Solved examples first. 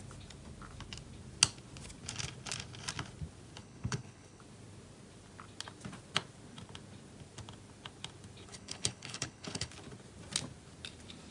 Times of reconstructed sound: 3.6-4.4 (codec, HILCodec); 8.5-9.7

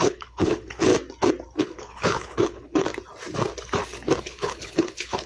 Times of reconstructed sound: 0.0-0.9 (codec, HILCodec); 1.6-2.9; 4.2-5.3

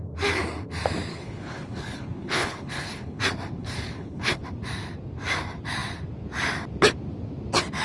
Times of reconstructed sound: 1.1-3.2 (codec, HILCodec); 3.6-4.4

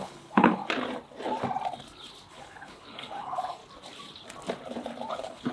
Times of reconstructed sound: 0.0-0.6 (codec, HILCodec); 2.3-3.6; 5.1-5.5

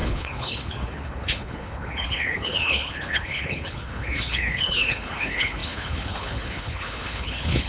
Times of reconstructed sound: 0.0-7.7 (codec, HILCodec)

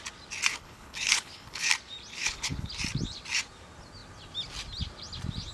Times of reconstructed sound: 0.5-1.7 (codec, HILCodec); 2.1-2.7

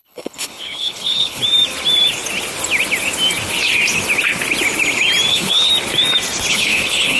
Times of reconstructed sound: 0.0-1.4 (codec, HILCodec); 5.3-5.7; 6.5-7.2

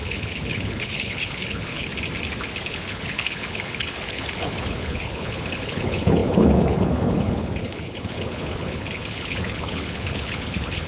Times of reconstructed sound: 0.0-1.9 (codec, HILCodec); 2.6-10.9